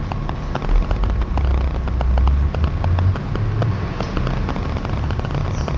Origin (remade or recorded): recorded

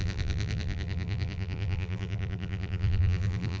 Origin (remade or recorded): remade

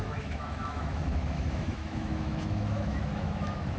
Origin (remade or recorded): remade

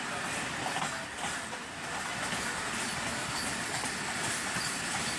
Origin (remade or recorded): recorded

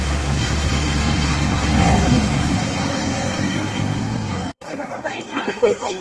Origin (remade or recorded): remade